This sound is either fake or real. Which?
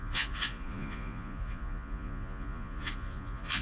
fake